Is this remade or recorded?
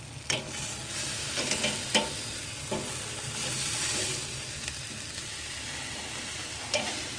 recorded